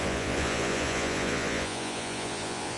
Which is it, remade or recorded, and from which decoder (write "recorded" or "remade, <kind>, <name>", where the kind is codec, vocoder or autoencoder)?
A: remade, vocoder, Vocos